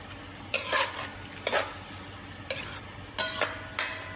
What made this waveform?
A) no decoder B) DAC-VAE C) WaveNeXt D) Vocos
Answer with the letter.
A